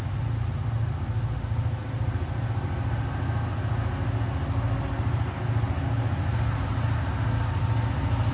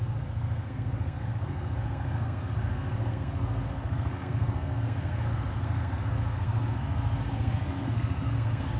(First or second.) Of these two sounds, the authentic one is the first